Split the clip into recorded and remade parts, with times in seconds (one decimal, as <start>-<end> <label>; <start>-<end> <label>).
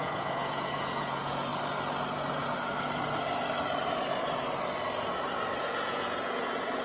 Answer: 0.0-1.5 remade; 1.5-5.6 recorded; 5.6-6.8 remade